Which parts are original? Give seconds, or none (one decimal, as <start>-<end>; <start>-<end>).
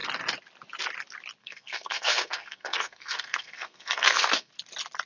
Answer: 0.0-1.4; 4.5-5.1